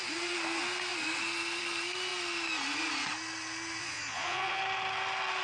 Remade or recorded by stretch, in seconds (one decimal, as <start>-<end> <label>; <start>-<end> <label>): 0.0-3.8 recorded; 3.8-4.6 remade; 4.6-5.4 recorded